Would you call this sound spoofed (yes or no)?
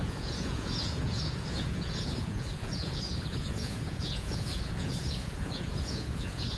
yes